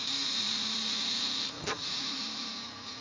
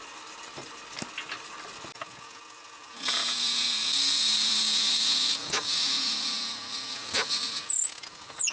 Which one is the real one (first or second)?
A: second